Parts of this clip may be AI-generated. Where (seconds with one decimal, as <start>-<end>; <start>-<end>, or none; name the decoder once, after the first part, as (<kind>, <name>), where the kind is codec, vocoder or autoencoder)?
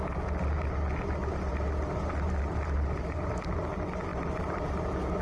none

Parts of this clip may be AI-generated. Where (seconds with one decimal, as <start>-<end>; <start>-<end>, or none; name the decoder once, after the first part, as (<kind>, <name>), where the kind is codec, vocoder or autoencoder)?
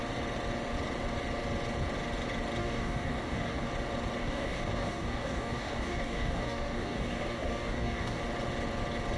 2.6-3.7 (codec, DAC); 4.2-8.2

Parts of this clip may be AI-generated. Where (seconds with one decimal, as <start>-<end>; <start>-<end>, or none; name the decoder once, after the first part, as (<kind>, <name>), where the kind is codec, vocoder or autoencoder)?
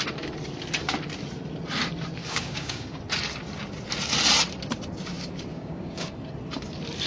2.2-3.0 (codec, DAC); 5.5-6.1